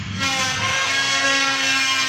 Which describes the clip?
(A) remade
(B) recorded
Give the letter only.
A